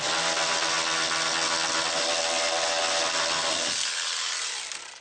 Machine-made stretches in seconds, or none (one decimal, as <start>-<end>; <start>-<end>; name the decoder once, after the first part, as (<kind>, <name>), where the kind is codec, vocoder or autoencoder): none